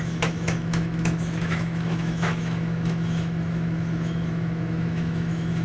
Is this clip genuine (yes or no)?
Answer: no